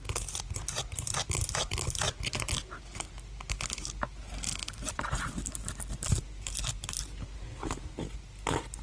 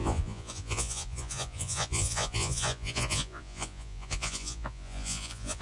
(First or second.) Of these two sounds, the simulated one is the second